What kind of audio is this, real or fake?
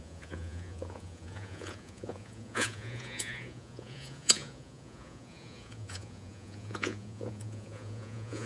fake